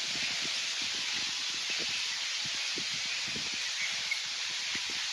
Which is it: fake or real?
real